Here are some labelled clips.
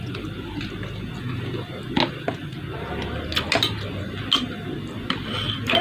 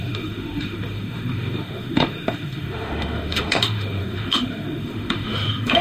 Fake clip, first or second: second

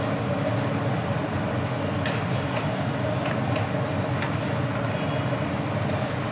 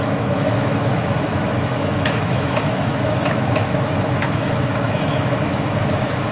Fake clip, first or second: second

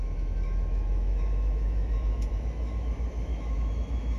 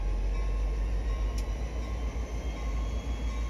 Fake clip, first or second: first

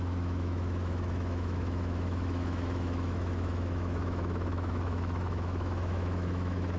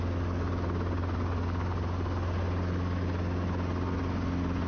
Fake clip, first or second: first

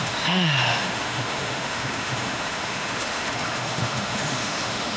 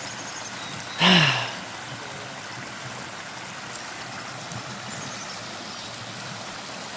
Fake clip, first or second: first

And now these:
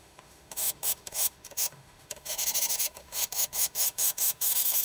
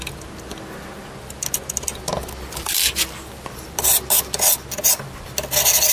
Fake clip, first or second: first